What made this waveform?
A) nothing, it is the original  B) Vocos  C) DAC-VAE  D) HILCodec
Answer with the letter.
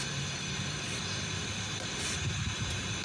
A